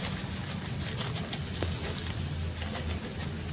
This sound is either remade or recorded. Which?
recorded